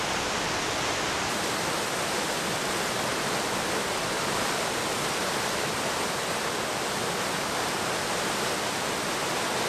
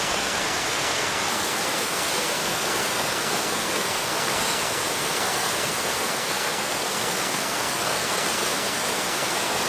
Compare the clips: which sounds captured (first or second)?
first